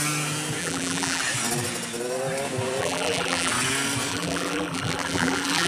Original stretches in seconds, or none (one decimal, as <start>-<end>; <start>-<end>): 0.0-0.6; 1.2-2.8; 3.5-4.1